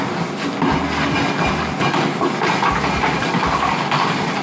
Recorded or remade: recorded